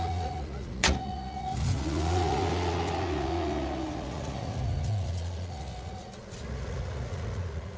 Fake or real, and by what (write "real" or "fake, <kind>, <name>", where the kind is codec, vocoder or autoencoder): fake, vocoder, Vocos